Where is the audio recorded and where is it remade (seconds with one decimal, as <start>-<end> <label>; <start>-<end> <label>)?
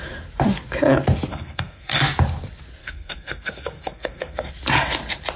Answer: 0.0-1.3 recorded; 1.3-2.0 remade; 2.0-2.8 recorded; 2.8-4.5 remade; 4.5-5.4 recorded